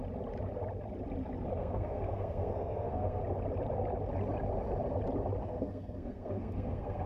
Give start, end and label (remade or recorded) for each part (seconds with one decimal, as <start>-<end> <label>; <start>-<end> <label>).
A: 0.0-1.6 recorded; 1.6-3.2 remade; 3.2-5.4 recorded; 5.4-7.1 remade